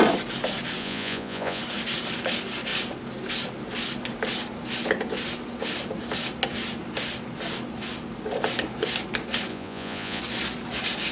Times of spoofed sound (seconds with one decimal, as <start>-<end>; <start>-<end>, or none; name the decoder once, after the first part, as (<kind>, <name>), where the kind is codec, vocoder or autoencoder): 0.8-1.6 (vocoder, Vocos); 9.5-10.2